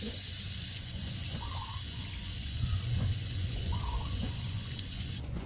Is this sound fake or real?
fake